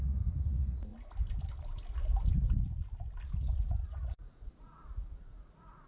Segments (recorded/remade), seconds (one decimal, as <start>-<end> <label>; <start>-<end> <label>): 0.0-0.9 remade; 0.9-3.3 recorded; 3.3-5.9 remade